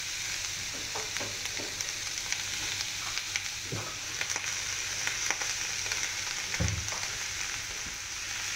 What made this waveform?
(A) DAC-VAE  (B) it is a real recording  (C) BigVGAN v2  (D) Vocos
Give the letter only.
B